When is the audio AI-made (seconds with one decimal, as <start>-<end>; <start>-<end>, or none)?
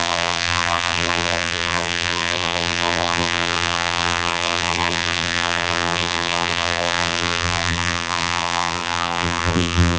0.0-10.0